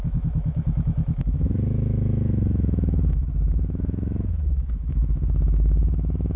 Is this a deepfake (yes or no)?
yes